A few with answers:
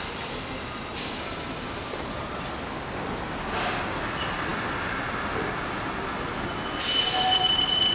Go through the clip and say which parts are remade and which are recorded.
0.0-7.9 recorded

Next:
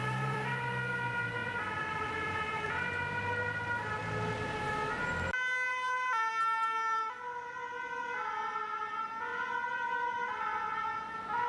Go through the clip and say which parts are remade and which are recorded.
0.0-0.7 remade; 0.7-1.4 recorded; 1.4-2.8 remade; 2.8-5.7 recorded; 5.7-6.3 remade; 6.3-9.3 recorded; 9.3-11.5 remade

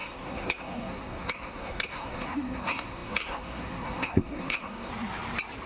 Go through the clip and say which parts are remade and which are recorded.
0.0-4.9 remade; 4.9-5.7 recorded

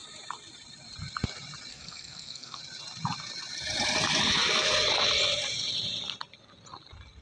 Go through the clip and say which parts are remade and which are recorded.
0.0-1.7 recorded; 1.7-2.6 remade; 2.6-7.2 recorded